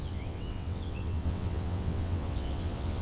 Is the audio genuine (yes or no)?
no